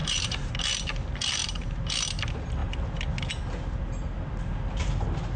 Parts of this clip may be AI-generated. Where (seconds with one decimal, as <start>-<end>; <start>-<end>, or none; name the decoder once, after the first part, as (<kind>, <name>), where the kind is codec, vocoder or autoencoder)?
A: 0.0-0.5 (vocoder, BigVGAN v2); 1.4-1.9